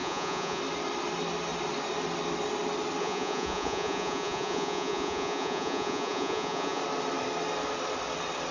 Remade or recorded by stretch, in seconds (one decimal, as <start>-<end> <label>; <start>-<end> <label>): 0.0-0.6 remade; 0.6-3.0 recorded; 3.0-6.8 remade; 6.8-8.5 recorded

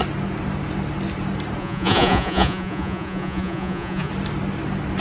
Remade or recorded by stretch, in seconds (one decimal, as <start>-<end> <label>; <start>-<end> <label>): 0.0-1.6 recorded; 1.6-4.1 remade; 4.1-5.0 recorded

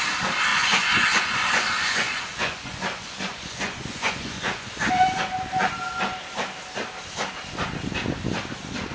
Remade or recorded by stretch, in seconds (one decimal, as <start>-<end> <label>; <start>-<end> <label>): 0.0-0.5 recorded; 0.5-4.9 remade; 4.9-8.9 recorded

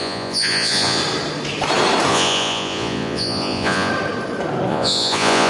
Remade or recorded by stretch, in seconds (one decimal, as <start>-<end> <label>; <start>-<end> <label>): 0.0-1.0 remade; 1.0-2.1 recorded; 2.1-3.9 remade; 3.9-4.7 recorded; 4.7-5.5 remade

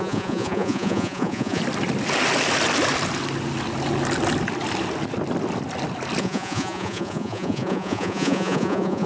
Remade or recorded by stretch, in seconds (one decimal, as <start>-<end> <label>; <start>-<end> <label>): 0.0-1.6 remade; 1.6-6.2 recorded; 6.2-9.1 remade

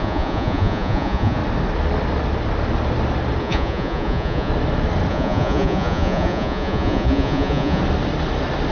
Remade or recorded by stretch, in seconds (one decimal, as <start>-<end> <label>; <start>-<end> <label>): 0.0-1.4 remade; 1.4-3.4 recorded; 3.4-4.5 remade; 4.5-5.1 recorded; 5.1-7.8 remade; 7.8-8.7 recorded